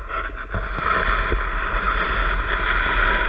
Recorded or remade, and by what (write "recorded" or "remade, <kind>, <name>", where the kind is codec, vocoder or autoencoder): recorded